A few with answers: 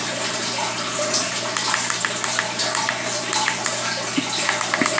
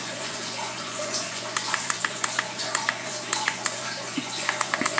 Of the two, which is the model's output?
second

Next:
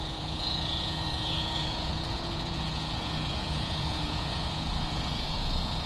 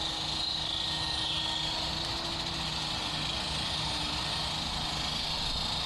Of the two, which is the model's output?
first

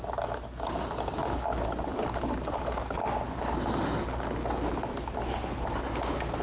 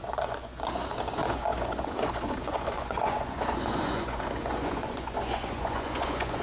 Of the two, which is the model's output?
second